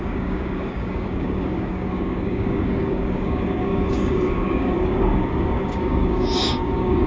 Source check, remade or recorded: remade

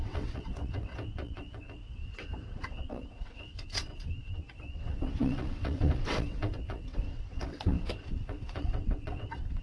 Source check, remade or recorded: remade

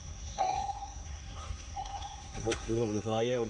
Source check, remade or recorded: remade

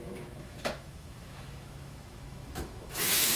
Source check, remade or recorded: remade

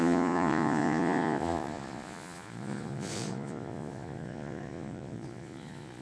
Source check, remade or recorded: remade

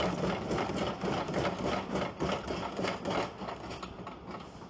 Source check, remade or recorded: recorded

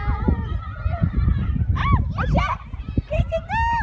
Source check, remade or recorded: recorded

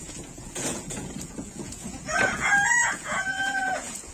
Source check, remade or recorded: remade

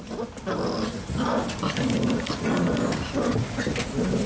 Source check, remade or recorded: recorded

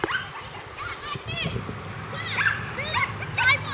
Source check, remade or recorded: recorded